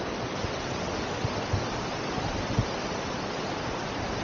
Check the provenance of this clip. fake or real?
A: real